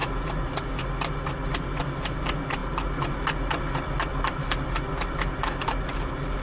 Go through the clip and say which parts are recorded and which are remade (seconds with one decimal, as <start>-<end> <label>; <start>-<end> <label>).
0.0-6.4 recorded